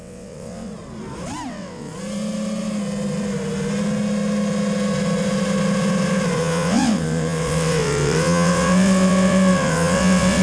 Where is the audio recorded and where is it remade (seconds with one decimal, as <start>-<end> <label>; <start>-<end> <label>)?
0.0-0.7 remade; 0.7-1.5 recorded; 1.5-1.9 remade; 1.9-6.4 recorded; 6.4-10.4 remade